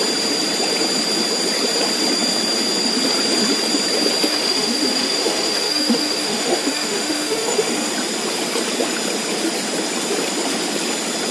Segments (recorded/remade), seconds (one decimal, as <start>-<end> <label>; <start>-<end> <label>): 0.0-4.3 recorded; 4.3-7.9 remade; 7.9-11.3 recorded

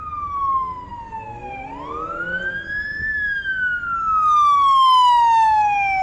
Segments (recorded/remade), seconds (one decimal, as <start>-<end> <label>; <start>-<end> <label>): 0.0-6.0 recorded

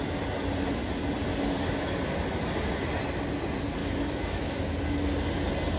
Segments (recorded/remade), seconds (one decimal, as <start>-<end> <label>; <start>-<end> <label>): 0.0-3.8 recorded; 3.8-4.6 remade; 4.6-5.8 recorded

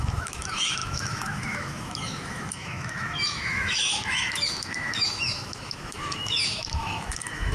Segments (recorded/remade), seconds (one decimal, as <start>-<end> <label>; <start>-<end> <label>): 0.0-7.5 remade

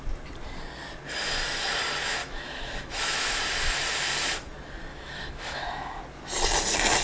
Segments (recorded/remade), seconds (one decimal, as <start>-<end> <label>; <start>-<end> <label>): 0.0-2.2 recorded; 2.2-3.4 remade; 3.4-4.9 recorded; 4.9-6.0 remade; 6.0-7.0 recorded